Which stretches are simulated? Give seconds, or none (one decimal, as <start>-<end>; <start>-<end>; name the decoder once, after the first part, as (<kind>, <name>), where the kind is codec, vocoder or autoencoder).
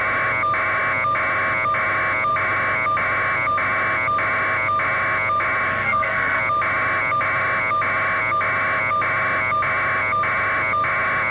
5.7-6.4 (codec, SNAC)